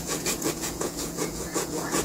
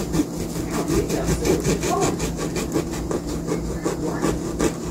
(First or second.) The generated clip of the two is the first